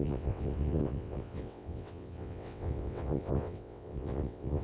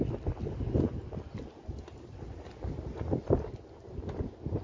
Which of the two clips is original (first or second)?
second